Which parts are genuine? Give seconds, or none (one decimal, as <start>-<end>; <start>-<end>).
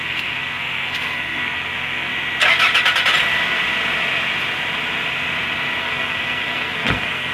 2.1-5.8